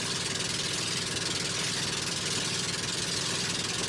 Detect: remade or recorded recorded